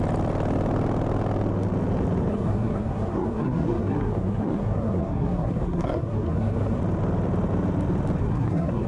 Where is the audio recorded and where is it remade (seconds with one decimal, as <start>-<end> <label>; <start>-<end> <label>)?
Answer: 0.0-2.3 recorded; 2.3-6.8 remade; 6.8-8.2 recorded; 8.2-8.9 remade